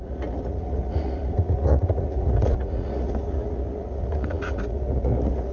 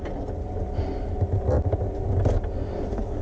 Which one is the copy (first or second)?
first